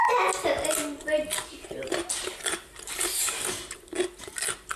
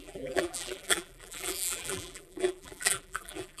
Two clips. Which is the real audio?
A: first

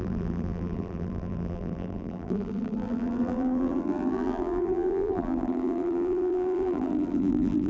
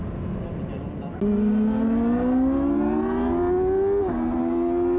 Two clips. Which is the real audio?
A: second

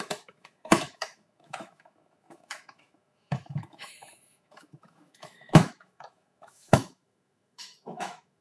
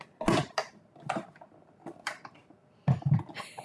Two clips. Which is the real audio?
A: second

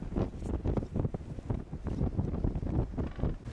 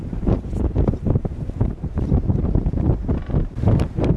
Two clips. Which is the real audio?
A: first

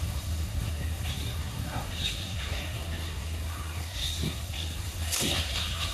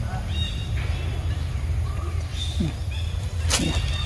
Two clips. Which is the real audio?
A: second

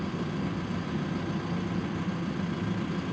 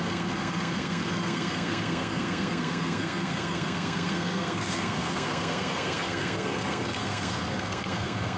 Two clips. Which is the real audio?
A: first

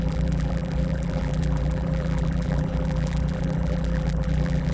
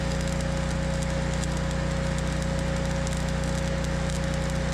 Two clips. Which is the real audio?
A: second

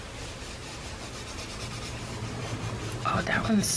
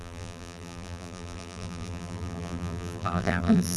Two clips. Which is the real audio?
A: first